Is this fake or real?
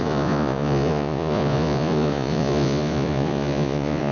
fake